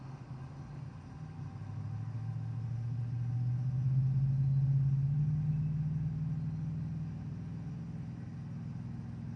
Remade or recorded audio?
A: recorded